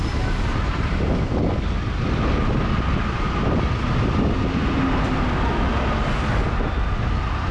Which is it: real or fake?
real